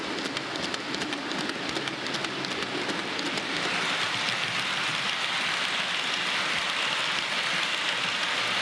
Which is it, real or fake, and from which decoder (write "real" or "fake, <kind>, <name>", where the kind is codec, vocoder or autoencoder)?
real